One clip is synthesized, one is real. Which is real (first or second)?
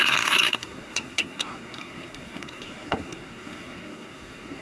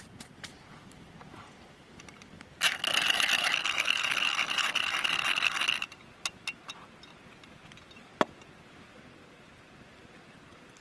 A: second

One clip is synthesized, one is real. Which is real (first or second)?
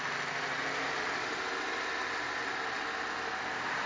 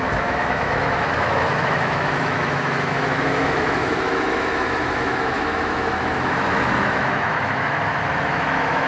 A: first